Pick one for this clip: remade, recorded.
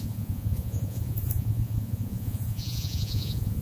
remade